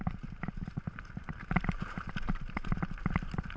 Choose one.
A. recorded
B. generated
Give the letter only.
B